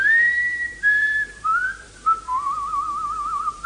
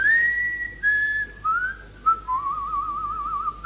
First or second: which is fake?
first